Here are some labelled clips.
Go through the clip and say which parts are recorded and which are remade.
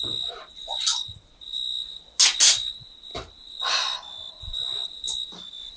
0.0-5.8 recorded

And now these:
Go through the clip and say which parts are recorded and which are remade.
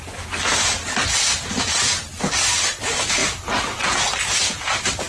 0.0-5.1 recorded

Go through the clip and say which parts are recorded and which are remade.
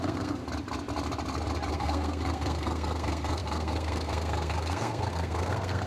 0.0-0.4 remade; 0.4-1.7 recorded; 1.7-5.9 remade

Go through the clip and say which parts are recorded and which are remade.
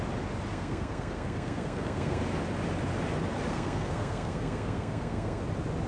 0.0-0.5 recorded; 0.5-2.2 remade; 2.2-3.5 recorded; 3.5-5.4 remade; 5.4-5.9 recorded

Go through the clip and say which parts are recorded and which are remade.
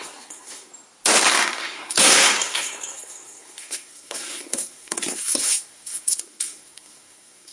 0.0-0.7 remade; 0.7-1.3 recorded; 1.3-7.5 remade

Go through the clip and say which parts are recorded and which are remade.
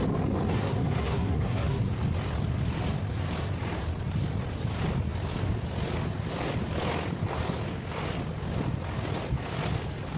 0.0-0.5 recorded; 0.5-1.8 remade; 1.8-10.2 recorded